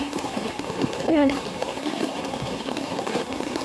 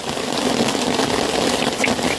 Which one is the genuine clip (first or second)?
second